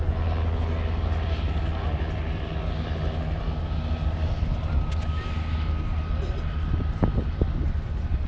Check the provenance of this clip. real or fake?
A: real